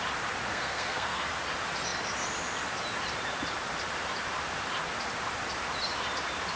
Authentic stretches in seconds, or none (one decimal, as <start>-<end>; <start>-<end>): 0.0-0.5; 1.3-6.6